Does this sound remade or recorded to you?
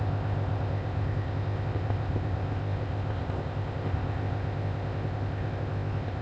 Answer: remade